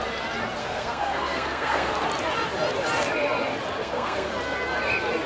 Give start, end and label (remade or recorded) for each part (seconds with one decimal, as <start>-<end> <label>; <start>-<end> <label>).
0.0-0.6 recorded; 0.6-1.9 remade; 1.9-3.8 recorded; 3.8-4.3 remade; 4.3-5.3 recorded